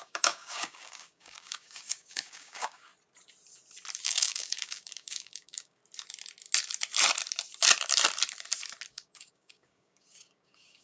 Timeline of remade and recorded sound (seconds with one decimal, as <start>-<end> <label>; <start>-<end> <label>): 0.0-2.9 remade; 2.9-4.0 recorded; 4.0-5.8 remade; 5.8-8.9 recorded; 8.9-10.8 remade